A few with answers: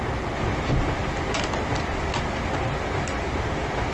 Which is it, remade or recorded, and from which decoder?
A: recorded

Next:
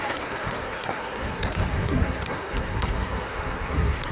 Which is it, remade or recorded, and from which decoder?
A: remade, codec, SNAC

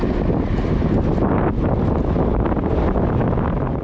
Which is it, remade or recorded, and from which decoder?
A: recorded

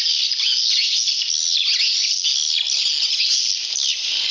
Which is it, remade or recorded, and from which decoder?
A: recorded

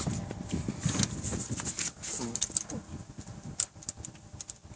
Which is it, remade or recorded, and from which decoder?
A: recorded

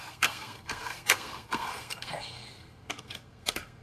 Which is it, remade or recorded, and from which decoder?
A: remade, codec, SNAC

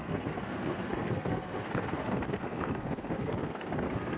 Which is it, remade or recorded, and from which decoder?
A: remade, codec, SNAC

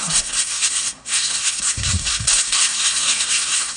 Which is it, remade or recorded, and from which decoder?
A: remade, codec, SNAC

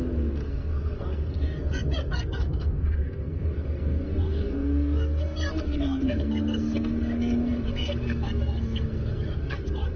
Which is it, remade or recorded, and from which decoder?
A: remade, codec, SNAC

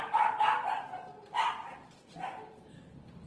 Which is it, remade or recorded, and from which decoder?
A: recorded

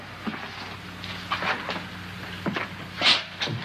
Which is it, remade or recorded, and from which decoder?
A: recorded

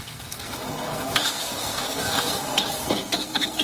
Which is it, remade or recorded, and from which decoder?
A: remade, codec, SNAC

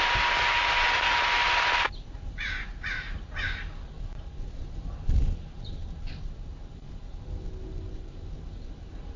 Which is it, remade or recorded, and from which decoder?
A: recorded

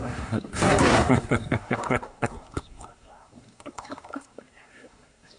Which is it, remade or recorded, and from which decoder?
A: remade, codec, SNAC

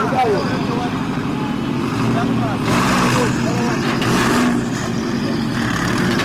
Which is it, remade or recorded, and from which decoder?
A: recorded